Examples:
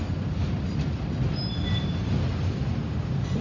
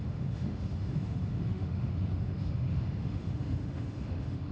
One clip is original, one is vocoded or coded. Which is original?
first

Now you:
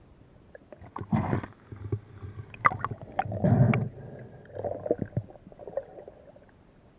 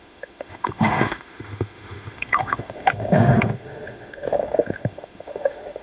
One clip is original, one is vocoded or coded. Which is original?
first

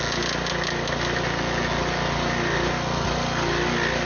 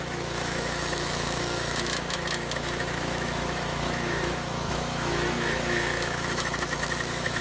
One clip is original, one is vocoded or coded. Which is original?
first